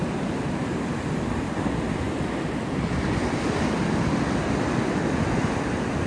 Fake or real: real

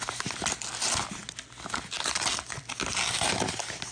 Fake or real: real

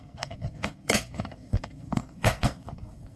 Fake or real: fake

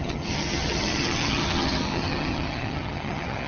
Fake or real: fake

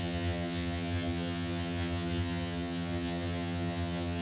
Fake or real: fake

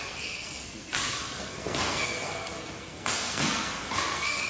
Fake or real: fake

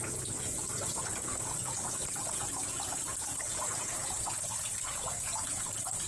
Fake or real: fake